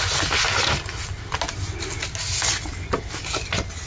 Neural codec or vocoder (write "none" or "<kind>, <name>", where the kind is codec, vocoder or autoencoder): none